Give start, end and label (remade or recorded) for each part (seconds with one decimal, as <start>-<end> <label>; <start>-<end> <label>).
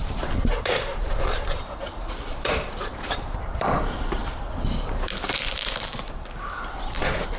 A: 0.0-4.2 remade; 4.2-4.7 recorded; 4.7-7.4 remade